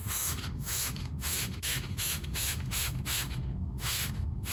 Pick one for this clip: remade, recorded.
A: remade